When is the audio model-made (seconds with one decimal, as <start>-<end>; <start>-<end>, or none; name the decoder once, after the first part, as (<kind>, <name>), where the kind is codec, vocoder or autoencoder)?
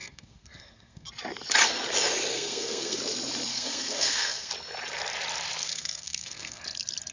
0.0-1.1 (codec, SNAC); 2.3-3.0; 3.5-4.5; 5.6-6.6